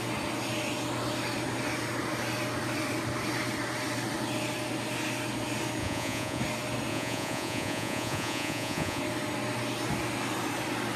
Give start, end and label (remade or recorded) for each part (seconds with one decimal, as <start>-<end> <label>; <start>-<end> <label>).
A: 0.0-5.8 recorded; 5.8-6.4 remade; 6.4-6.9 recorded; 6.9-9.0 remade; 9.0-11.0 recorded